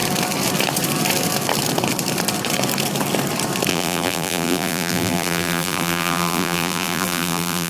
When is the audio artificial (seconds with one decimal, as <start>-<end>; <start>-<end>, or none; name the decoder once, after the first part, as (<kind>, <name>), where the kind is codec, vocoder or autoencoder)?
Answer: 3.7-7.7 (vocoder, BigVGAN v2)